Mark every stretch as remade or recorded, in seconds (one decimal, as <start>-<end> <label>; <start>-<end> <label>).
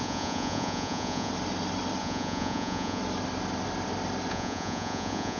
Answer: 0.0-1.3 remade; 1.3-2.0 recorded; 2.0-3.0 remade; 3.0-4.3 recorded; 4.3-5.4 remade